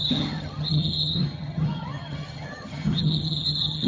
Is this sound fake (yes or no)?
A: yes